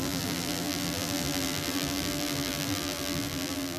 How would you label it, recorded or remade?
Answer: remade